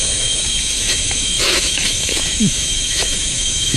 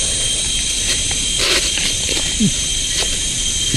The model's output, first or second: first